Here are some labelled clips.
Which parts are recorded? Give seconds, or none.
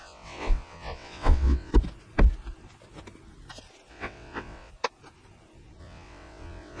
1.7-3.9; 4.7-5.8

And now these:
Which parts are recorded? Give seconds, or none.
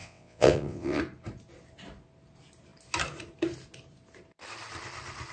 1.0-5.3